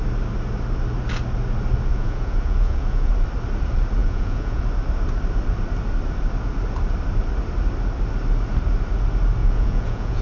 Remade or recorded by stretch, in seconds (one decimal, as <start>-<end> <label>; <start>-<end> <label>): 0.0-1.9 recorded; 1.9-3.1 remade; 3.1-4.0 recorded; 4.0-4.6 remade; 4.6-9.4 recorded; 9.4-10.2 remade

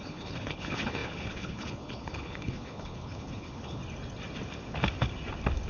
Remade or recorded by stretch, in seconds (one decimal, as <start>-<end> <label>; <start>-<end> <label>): 0.0-3.8 remade; 3.8-5.7 recorded

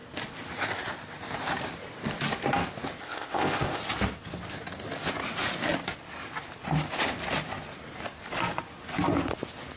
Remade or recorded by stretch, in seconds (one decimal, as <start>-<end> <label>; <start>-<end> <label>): 0.0-3.0 recorded; 3.0-3.8 remade; 3.8-9.8 recorded

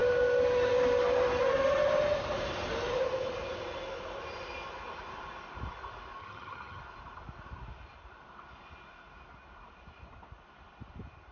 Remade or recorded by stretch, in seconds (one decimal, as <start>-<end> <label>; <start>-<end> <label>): 0.0-6.2 recorded; 6.2-6.8 remade; 6.8-11.3 recorded

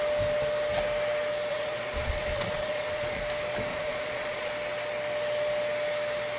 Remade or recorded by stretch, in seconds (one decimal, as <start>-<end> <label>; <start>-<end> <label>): 0.0-1.5 recorded; 1.5-3.2 remade; 3.2-3.7 recorded; 3.7-4.5 remade; 4.5-6.4 recorded

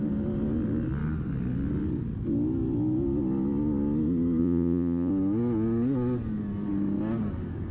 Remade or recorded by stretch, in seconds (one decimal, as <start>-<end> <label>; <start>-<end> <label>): 0.0-4.4 recorded; 4.4-5.1 remade; 5.1-7.7 recorded

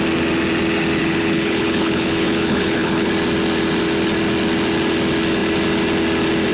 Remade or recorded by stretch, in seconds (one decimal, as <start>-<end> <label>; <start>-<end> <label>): 0.0-1.0 recorded; 1.0-3.1 remade; 3.1-6.5 recorded